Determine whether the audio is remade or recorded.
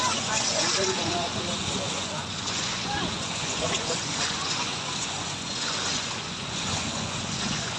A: remade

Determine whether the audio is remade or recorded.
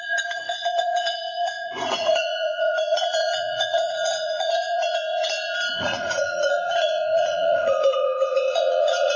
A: remade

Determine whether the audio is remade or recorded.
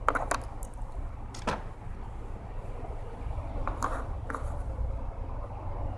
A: recorded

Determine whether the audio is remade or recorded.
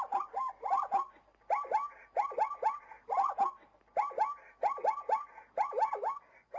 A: recorded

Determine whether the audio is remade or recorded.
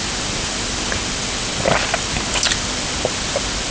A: recorded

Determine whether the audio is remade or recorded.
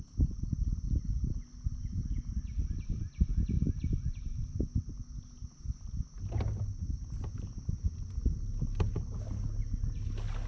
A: recorded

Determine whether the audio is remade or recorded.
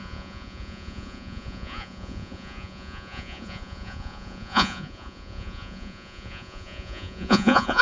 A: remade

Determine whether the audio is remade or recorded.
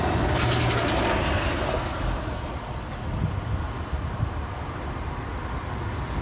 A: recorded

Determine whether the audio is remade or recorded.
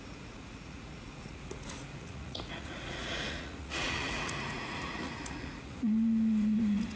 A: remade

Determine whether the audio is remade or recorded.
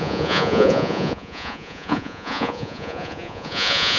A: remade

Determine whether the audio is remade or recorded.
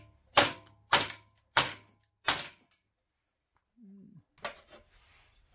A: recorded